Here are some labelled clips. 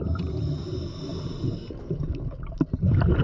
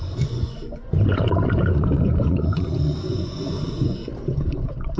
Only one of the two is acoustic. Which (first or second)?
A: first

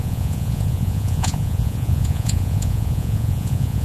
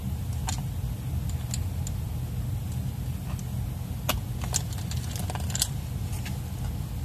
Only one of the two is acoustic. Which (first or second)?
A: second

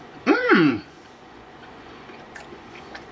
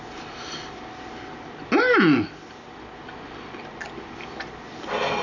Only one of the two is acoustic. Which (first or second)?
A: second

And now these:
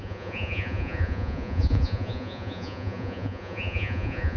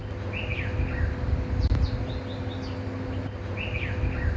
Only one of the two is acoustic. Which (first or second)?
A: second